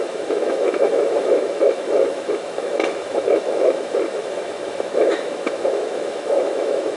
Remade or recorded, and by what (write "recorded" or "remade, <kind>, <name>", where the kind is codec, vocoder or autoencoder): remade, autoencoder, DAC-VAE